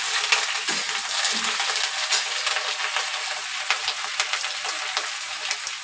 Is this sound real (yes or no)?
yes